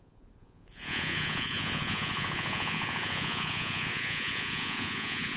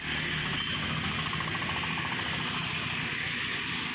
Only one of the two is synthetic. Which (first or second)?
first